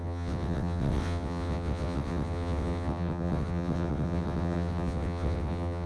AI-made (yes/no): yes